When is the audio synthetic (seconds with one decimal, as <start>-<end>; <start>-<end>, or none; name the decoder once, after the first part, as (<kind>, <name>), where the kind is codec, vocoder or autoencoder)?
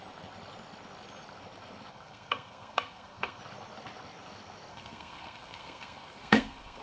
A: 1.9-3.4 (codec, SNAC); 4.7-6.8